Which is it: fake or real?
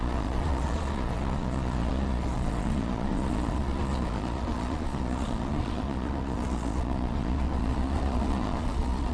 fake